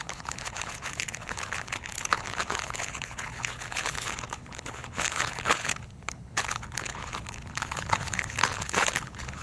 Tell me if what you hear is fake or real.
fake